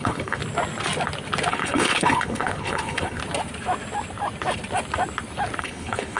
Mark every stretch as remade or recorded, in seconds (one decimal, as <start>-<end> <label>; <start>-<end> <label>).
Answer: 0.0-0.4 remade; 0.4-1.5 recorded; 1.5-3.2 remade; 3.2-5.6 recorded; 5.6-6.2 remade